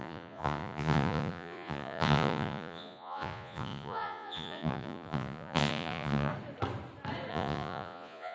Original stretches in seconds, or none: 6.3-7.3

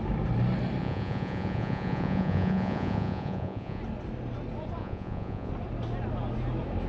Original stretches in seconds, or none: 0.0-0.8; 3.8-4.8; 5.5-6.9

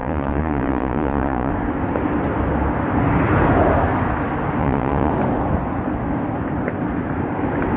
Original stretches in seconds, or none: 1.5-4.6; 5.1-7.8

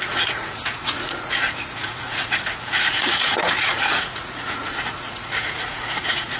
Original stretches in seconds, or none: none

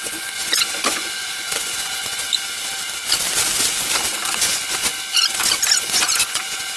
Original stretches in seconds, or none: 2.2-4.3; 4.9-5.8

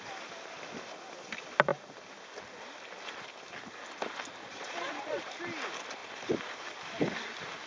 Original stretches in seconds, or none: 0.0-4.4; 5.2-7.7

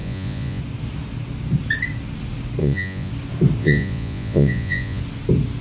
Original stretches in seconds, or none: 0.6-2.6; 3.1-3.6; 5.0-5.6